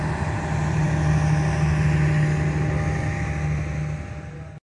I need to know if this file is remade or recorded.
recorded